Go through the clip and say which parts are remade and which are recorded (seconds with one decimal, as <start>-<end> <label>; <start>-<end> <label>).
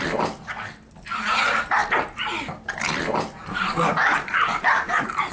0.0-5.3 recorded